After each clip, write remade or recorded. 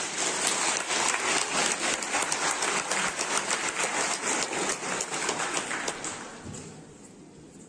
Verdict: recorded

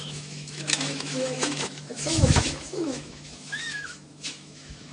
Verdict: remade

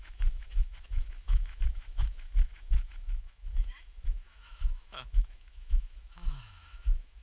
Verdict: remade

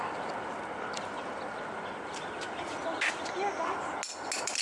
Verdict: recorded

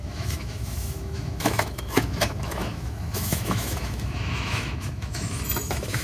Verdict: remade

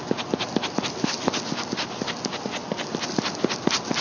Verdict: recorded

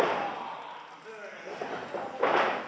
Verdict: recorded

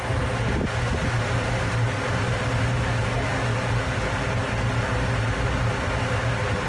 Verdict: recorded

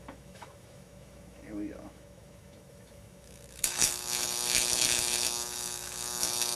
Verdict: remade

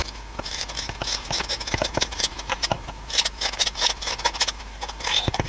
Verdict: remade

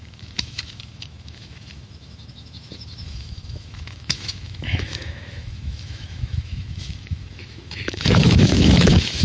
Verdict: remade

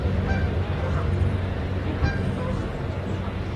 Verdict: recorded